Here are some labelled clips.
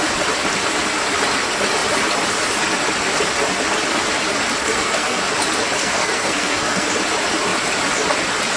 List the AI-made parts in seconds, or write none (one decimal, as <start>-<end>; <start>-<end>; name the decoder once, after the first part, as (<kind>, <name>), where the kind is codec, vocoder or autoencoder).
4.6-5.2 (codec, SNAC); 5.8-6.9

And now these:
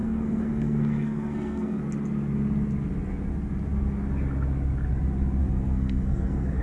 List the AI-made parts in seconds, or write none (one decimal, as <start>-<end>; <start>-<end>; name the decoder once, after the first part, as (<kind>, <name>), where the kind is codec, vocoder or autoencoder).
0.0-1.8 (codec, SNAC); 5.4-6.6

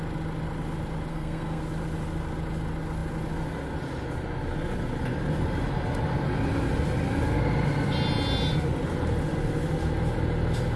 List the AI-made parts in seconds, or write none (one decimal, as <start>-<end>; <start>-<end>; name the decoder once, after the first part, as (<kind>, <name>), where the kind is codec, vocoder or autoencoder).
1.1-1.6 (codec, SNAC)

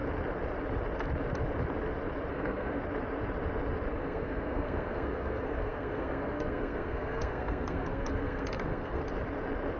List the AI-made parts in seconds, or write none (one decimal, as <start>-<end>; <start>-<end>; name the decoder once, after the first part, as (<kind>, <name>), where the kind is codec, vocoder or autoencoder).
2.3-2.8 (codec, SNAC); 3.9-9.0

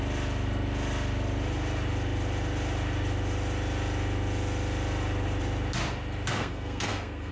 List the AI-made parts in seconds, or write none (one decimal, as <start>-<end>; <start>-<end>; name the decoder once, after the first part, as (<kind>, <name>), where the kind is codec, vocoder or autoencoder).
6.3-7.3 (codec, SNAC)

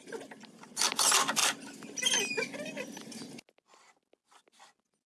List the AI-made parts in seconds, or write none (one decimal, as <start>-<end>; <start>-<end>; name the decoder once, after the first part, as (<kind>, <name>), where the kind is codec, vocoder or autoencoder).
none

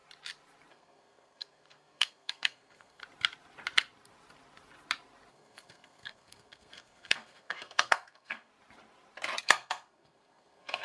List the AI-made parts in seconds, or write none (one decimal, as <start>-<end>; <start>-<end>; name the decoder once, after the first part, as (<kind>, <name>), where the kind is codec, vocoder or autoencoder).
0.7-3.0 (codec, SNAC); 5.3-8.5; 9.4-10.8